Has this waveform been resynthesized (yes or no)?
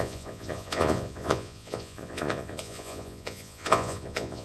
yes